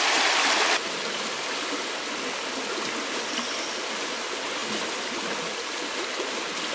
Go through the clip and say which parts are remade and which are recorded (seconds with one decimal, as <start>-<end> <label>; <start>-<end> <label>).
0.0-6.7 recorded